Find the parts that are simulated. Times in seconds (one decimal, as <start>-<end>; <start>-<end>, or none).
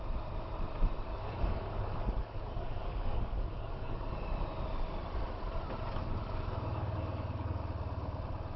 1.1-4.1; 6.0-7.6